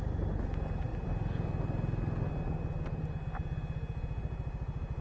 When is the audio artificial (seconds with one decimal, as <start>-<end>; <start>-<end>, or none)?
none